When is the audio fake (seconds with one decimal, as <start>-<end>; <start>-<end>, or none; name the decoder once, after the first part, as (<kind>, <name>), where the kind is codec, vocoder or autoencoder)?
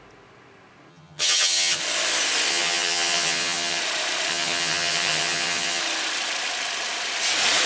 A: 0.9-1.8 (vocoder, HiFi-GAN); 2.5-3.8; 4.3-5.8